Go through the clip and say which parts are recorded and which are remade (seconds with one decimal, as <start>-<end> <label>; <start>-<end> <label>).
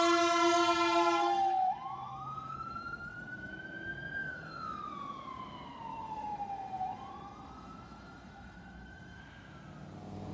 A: 0.0-1.2 recorded; 1.2-3.5 remade; 3.5-4.2 recorded; 4.2-4.8 remade; 4.8-5.9 recorded; 5.9-9.2 remade; 9.2-10.3 recorded